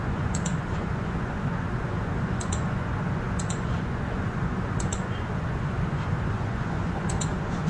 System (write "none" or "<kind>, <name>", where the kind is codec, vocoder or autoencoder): vocoder, Vocos